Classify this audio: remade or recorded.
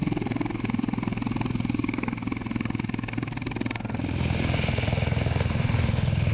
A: recorded